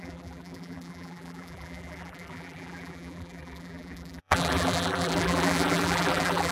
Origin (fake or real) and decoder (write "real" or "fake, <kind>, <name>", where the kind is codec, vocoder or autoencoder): fake, vocoder, BigVGAN v2